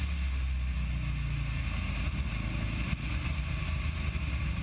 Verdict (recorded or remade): recorded